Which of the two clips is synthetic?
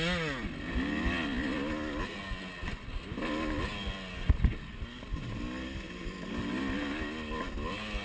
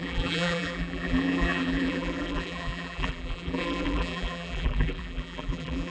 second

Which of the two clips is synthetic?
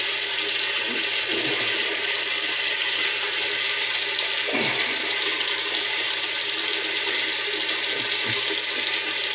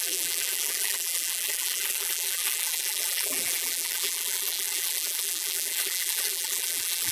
second